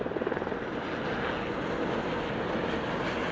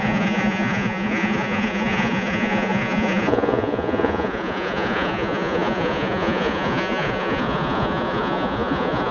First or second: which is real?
first